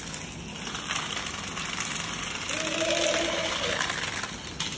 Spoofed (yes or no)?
no